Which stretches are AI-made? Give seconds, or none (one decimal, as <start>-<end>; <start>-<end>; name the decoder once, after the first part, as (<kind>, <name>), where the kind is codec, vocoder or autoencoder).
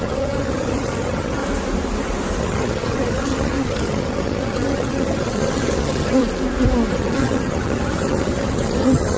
0.0-1.4 (vocoder, HiFi-GAN); 2.4-6.2; 6.9-9.2